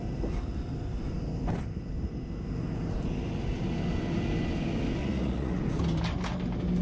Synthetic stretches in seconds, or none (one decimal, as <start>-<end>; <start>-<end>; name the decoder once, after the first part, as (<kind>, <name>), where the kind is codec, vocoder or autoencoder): 5.0-5.6 (vocoder, Vocos)